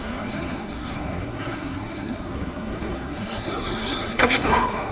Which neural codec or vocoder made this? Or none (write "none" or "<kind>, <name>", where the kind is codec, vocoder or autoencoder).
codec, SNAC